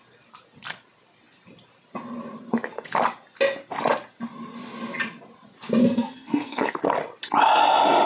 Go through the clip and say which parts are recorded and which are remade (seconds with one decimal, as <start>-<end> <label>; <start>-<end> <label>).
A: 0.0-5.8 recorded; 5.8-6.8 remade; 6.8-8.1 recorded